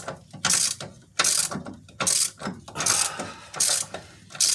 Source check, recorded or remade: recorded